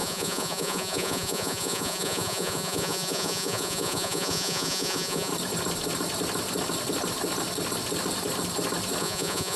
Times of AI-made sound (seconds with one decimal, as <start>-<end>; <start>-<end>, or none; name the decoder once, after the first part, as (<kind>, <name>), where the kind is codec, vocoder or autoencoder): 0.0-5.3 (vocoder, Vocos); 9.0-9.6